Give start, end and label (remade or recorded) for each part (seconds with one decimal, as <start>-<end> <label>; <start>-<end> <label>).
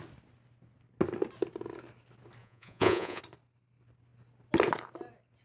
0.0-2.4 recorded; 2.4-3.2 remade; 3.2-5.4 recorded